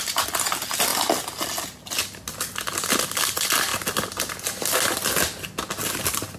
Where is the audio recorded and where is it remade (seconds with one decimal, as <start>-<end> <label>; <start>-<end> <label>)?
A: 0.0-6.4 recorded

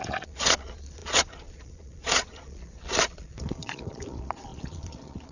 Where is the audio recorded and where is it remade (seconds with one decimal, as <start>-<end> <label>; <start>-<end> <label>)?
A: 0.0-5.3 remade

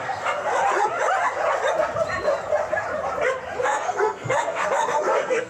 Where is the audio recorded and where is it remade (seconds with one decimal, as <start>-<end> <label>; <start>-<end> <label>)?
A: 0.0-0.6 remade; 0.6-3.6 recorded; 3.6-5.5 remade

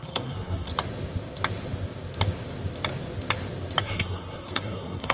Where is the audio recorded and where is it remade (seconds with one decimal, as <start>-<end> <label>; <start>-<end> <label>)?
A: 0.0-0.7 remade; 0.7-3.8 recorded; 3.8-5.1 remade

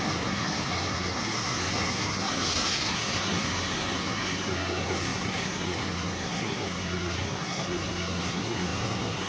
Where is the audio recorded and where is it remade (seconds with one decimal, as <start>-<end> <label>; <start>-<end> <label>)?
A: 0.0-9.3 remade